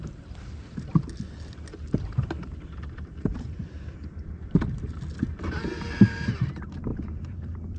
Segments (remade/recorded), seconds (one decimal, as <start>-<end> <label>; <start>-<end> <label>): 0.0-1.0 remade; 1.0-3.3 recorded; 3.3-5.0 remade; 5.0-6.9 recorded; 6.9-7.8 remade